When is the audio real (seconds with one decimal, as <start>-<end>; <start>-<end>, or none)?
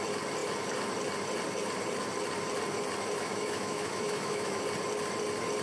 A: 0.0-3.2; 4.6-5.6